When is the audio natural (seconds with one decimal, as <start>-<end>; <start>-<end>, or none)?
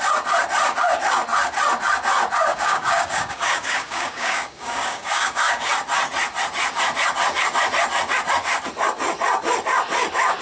0.0-2.5; 5.7-10.4